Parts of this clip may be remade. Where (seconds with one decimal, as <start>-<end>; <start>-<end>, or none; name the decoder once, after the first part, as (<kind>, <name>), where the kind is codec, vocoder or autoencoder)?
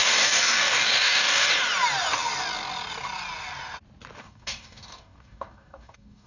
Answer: 0.0-1.5 (codec, DAC); 4.2-6.3